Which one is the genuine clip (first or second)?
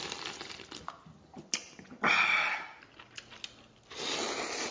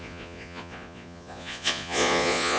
first